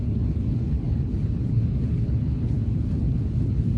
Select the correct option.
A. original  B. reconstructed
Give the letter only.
B